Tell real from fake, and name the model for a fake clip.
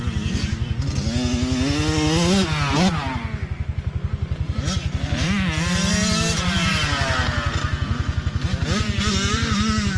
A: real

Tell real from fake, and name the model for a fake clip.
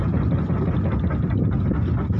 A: real